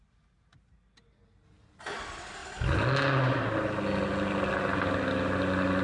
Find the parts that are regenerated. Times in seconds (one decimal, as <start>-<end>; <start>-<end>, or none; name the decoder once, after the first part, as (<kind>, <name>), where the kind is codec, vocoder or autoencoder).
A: none